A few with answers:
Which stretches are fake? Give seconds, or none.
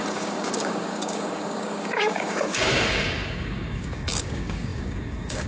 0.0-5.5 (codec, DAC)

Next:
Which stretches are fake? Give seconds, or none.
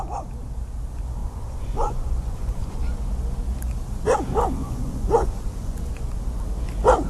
1.2-2.8 (vocoder, Vocos); 4.6-6.1